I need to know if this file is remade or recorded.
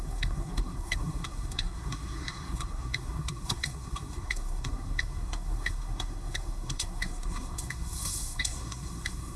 remade